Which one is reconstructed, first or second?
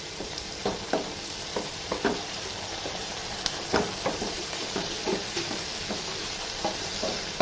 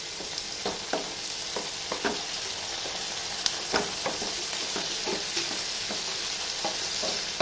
first